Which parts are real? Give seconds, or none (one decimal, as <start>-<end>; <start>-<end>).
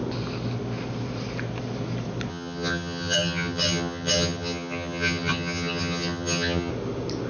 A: 0.0-2.3; 6.7-7.3